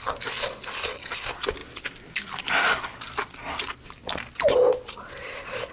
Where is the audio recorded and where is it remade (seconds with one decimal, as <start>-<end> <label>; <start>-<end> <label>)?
0.0-5.7 recorded